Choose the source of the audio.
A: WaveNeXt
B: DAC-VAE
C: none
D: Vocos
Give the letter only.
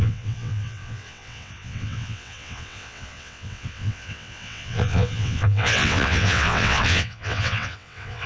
A